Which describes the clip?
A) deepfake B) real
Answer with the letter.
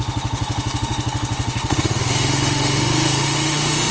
A